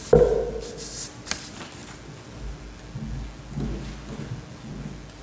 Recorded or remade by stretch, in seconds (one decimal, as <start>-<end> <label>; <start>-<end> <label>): 0.0-5.2 recorded